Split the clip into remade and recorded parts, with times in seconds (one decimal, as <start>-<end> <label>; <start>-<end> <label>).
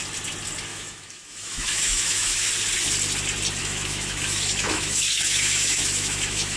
0.0-0.7 recorded; 0.7-2.5 remade; 2.5-3.6 recorded; 3.6-6.6 remade